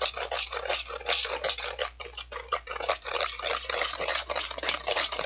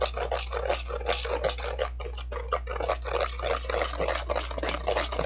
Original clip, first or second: second